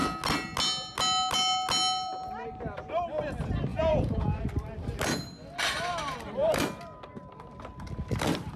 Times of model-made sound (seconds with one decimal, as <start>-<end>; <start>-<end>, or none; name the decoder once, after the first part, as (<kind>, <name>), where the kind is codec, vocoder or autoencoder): 3.7-4.4 (vocoder, Vocos)